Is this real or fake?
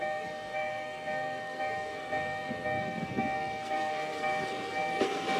fake